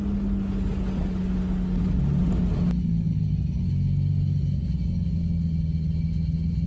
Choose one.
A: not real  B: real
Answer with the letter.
B